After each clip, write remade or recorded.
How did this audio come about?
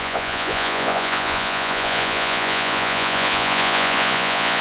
remade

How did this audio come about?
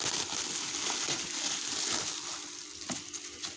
recorded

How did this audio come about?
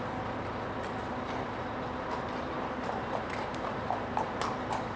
recorded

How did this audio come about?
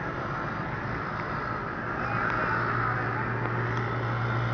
recorded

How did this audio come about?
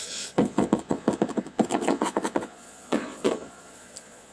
remade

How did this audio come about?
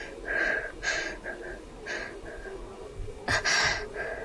recorded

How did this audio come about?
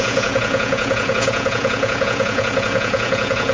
remade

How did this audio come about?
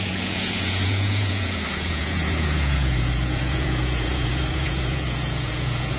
remade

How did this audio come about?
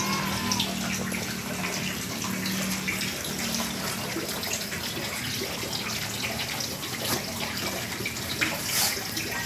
recorded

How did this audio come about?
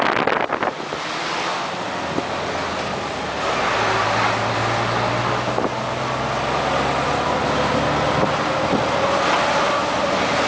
recorded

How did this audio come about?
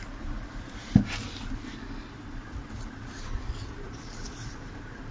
recorded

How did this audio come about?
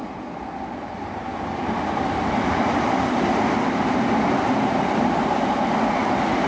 recorded